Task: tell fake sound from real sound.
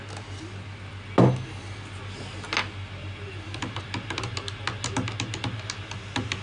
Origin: real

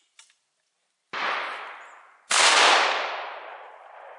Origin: real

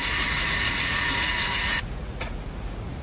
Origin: fake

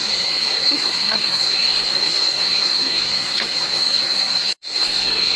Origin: fake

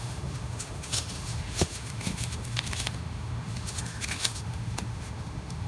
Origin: fake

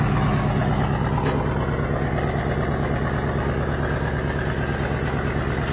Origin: real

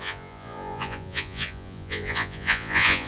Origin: fake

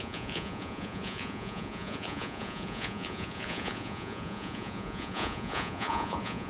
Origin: fake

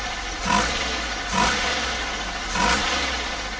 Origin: real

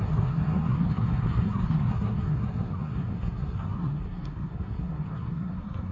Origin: fake